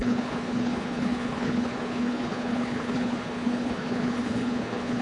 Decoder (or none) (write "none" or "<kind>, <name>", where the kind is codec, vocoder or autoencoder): codec, HILCodec